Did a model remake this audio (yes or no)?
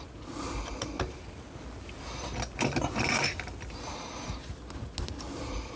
no